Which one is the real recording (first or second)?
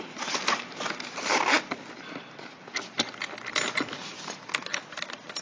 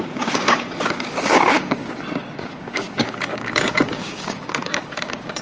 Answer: first